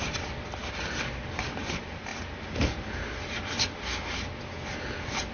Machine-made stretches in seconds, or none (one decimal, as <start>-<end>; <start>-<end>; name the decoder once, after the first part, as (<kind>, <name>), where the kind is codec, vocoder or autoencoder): none